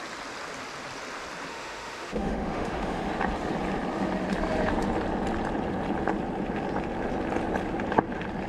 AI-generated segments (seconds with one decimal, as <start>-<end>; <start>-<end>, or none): 1.5-3.0